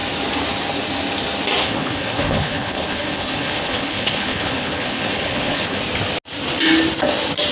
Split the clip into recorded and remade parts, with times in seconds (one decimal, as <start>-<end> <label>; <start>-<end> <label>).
0.0-1.6 recorded; 1.6-5.8 remade; 5.8-7.5 recorded